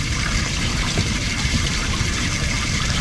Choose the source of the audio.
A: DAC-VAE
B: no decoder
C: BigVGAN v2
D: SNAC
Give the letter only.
C